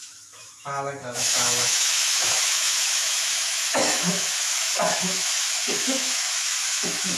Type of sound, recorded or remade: remade